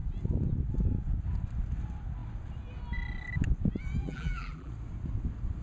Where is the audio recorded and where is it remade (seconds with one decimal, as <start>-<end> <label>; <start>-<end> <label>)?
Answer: 0.0-4.0 recorded; 4.0-4.7 remade; 4.7-5.6 recorded